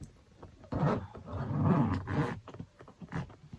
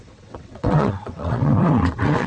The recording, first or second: first